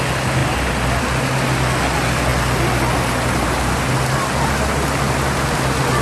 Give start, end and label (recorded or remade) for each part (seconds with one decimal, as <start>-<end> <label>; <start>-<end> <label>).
0.0-6.0 recorded